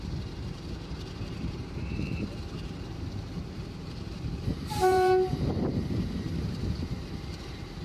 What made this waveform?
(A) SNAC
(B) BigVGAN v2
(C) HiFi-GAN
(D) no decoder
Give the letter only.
B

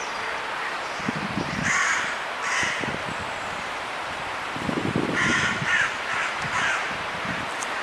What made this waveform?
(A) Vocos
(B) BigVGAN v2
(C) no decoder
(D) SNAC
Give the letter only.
B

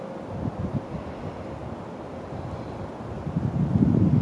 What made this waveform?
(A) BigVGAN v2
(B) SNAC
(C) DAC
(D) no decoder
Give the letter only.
D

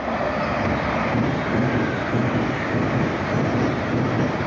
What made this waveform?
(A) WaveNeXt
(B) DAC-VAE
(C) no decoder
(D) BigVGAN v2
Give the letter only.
C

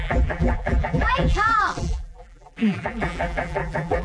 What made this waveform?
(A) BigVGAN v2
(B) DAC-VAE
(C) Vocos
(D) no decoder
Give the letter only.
A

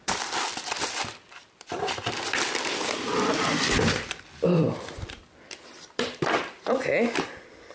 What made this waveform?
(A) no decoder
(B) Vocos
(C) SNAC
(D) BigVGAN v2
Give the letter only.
D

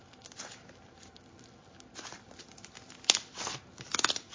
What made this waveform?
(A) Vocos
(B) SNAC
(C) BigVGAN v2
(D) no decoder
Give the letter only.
D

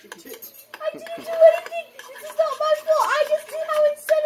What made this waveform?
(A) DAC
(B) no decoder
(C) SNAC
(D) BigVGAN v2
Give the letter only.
B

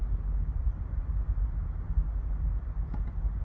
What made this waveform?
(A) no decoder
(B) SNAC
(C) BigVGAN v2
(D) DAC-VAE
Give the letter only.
A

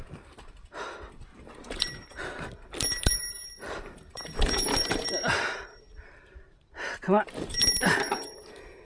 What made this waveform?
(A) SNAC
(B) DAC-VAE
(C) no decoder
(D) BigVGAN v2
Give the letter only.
D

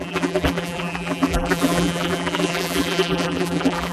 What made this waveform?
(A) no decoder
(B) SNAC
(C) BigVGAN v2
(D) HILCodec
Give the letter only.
C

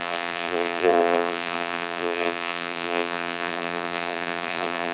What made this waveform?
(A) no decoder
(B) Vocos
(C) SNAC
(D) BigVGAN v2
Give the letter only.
D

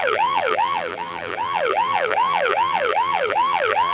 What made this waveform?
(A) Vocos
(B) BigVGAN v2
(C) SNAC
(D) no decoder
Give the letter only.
B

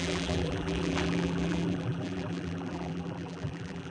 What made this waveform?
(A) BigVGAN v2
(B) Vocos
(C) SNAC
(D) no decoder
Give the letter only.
A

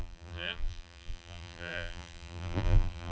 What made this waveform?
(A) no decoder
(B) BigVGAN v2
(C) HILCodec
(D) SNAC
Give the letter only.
B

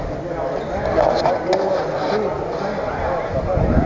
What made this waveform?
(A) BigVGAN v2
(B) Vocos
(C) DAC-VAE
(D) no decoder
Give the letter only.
D